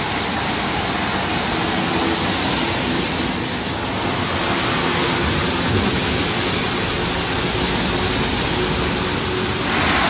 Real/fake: real